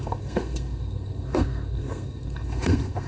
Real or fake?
fake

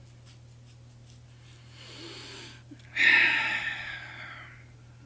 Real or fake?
real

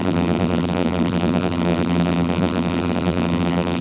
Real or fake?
fake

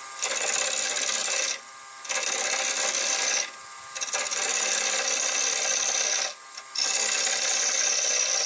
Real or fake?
real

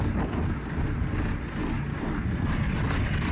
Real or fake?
real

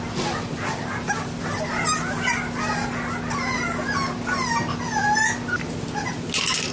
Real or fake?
real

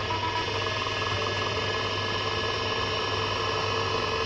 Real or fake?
real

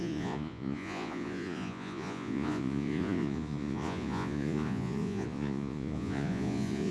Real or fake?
fake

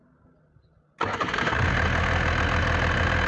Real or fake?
real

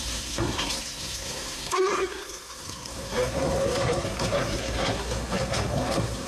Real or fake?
fake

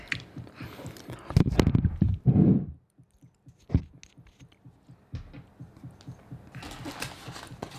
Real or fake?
real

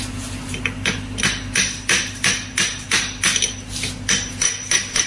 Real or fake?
real